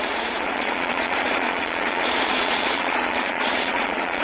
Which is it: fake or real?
fake